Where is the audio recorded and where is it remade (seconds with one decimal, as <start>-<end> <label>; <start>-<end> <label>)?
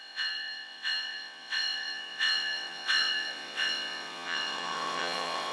0.0-5.5 remade